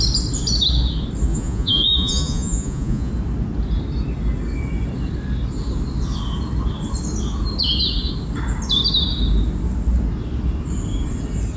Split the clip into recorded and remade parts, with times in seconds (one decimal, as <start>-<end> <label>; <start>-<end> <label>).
0.0-1.3 recorded; 1.3-3.1 remade; 3.1-11.6 recorded